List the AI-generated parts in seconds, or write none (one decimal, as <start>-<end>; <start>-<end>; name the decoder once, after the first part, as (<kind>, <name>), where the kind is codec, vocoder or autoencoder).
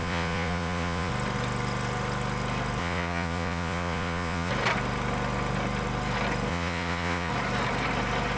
0.0-1.1 (vocoder, Vocos); 2.8-4.5; 6.5-7.3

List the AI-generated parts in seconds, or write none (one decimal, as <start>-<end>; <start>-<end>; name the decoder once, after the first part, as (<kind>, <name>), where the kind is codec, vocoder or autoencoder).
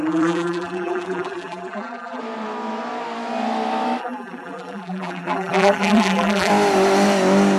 0.0-2.2 (vocoder, BigVGAN v2); 4.0-6.5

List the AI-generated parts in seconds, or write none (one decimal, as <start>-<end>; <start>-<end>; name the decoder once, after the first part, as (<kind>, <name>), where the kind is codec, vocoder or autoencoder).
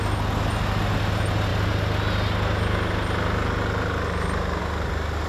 none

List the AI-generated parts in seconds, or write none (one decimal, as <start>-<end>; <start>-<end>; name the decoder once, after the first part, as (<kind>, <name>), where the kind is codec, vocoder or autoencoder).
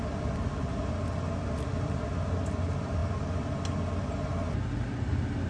none